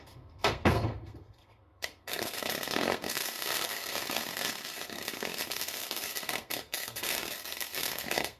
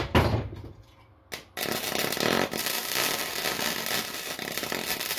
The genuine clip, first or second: second